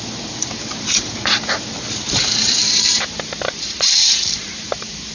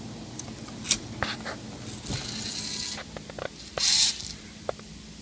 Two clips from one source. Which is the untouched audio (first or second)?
second